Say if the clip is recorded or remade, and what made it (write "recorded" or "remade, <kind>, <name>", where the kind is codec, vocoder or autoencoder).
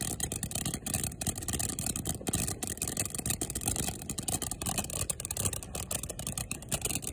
recorded